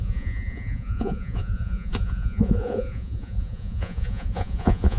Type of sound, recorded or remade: remade